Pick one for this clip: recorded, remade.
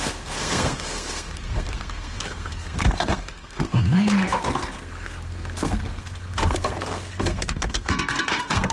remade